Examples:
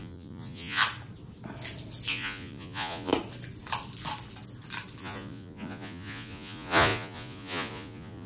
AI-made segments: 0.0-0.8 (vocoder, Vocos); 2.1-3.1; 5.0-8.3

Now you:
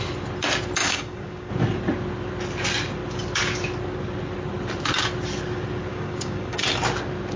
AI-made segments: 0.8-1.5 (codec, DAC); 5.9-6.6

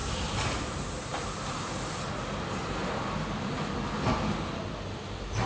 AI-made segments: 0.0-1.7 (vocoder, BigVGAN v2)